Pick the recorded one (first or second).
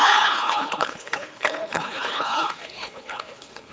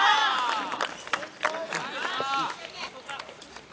second